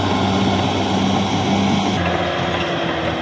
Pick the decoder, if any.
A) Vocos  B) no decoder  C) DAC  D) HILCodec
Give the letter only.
B